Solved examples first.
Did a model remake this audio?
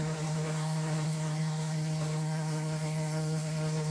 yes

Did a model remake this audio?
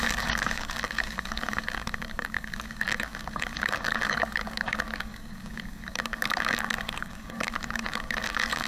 yes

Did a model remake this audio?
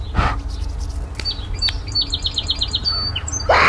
no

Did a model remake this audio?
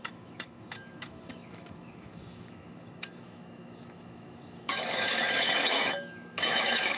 yes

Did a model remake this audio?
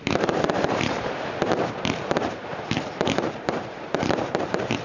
yes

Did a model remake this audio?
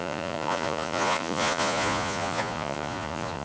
yes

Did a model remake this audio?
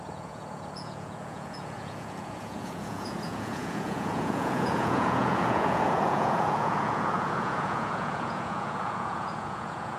yes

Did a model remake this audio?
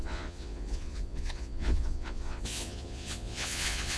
yes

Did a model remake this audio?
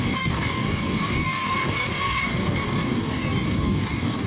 yes